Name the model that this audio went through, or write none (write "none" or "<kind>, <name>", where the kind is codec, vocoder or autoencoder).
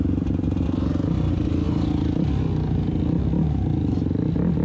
none